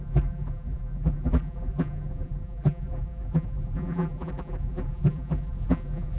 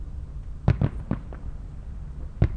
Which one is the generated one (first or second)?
first